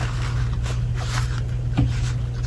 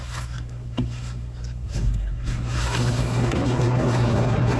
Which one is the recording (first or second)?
first